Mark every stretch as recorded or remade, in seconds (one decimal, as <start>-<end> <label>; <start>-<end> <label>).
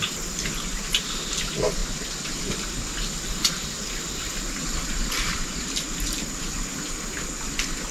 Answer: 0.0-7.9 recorded